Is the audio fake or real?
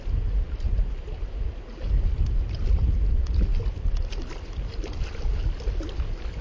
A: real